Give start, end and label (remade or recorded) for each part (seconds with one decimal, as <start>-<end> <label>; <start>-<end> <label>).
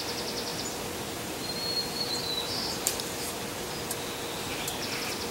0.0-0.5 recorded; 0.5-3.7 remade; 3.7-5.3 recorded